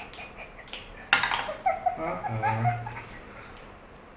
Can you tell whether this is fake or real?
real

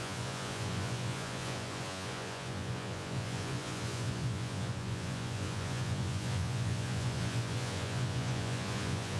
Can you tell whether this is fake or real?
fake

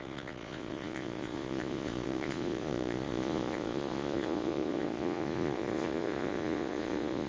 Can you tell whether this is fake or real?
fake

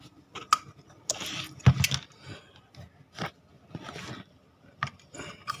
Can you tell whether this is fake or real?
real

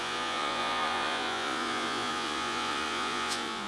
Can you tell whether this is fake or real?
fake